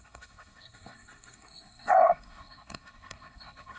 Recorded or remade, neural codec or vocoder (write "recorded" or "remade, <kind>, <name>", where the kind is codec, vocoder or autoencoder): remade, codec, SNAC